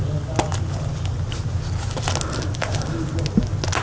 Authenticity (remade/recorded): recorded